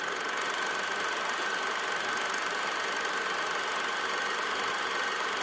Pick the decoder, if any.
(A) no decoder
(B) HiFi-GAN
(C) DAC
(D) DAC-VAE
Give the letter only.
A